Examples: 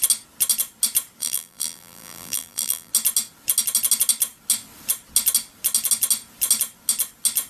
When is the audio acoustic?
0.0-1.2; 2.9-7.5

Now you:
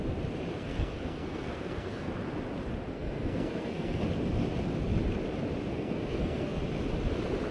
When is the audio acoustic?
0.0-0.5; 2.1-2.9; 4.0-5.7; 6.6-7.5

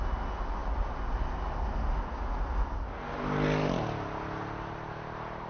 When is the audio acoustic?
0.0-5.5